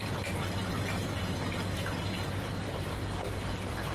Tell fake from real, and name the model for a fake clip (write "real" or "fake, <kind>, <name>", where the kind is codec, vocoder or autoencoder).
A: fake, vocoder, BigVGAN v2